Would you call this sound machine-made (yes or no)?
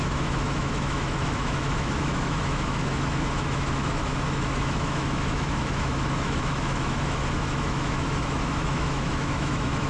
yes